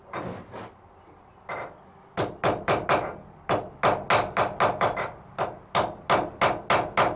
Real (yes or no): yes